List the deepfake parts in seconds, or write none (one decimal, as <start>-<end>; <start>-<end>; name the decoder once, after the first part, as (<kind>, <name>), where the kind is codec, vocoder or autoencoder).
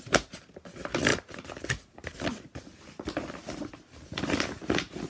none